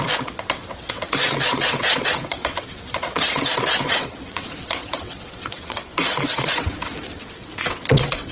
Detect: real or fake fake